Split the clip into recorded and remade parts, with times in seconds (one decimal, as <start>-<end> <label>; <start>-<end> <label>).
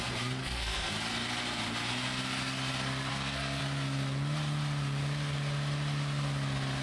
0.0-0.4 recorded; 0.4-0.9 remade; 0.9-3.1 recorded; 3.1-3.6 remade; 3.6-6.8 recorded